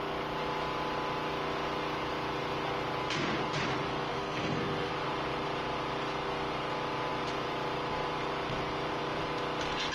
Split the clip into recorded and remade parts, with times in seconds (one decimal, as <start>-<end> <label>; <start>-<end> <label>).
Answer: 0.0-4.1 recorded; 4.1-4.9 remade; 4.9-9.9 recorded